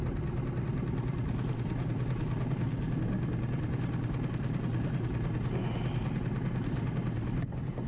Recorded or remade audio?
recorded